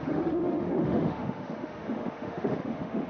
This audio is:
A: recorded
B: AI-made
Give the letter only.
B